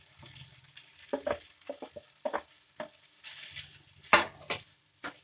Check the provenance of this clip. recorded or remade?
recorded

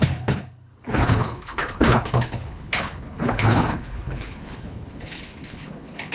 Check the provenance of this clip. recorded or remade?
remade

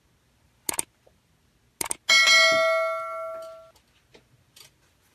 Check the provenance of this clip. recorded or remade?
recorded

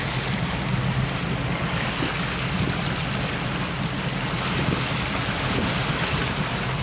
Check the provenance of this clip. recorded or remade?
recorded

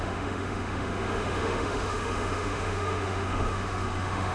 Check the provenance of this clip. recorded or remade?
remade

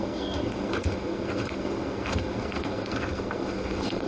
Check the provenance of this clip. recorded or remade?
remade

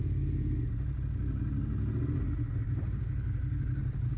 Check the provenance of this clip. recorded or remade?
recorded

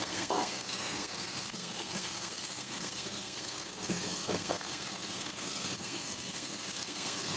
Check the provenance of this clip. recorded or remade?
remade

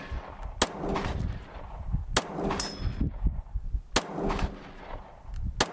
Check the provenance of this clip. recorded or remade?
recorded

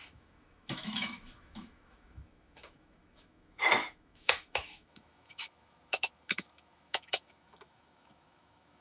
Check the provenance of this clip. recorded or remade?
remade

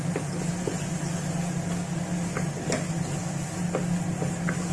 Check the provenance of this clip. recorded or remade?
recorded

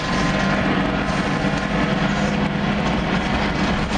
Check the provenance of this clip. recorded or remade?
recorded